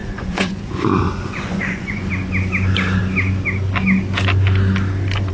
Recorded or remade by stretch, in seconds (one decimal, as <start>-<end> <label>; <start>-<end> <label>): 0.0-2.1 remade; 2.1-5.3 recorded